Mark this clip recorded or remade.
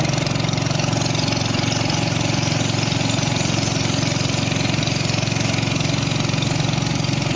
recorded